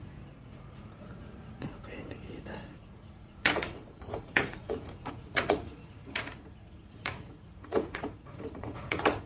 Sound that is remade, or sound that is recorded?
remade